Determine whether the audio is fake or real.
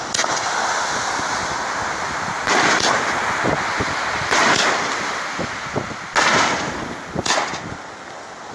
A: real